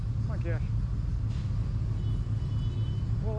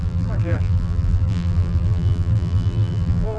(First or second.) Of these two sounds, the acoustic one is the first